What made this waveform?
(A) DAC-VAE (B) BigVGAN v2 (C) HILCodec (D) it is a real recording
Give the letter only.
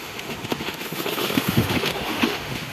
A